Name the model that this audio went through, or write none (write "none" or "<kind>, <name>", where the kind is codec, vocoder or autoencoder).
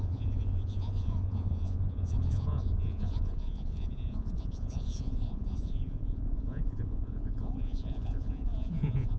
vocoder, Vocos